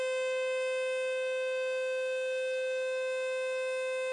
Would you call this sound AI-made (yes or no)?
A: no